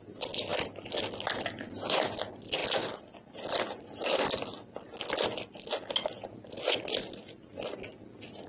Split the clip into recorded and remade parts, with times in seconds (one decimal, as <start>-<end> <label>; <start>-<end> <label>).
0.0-8.5 recorded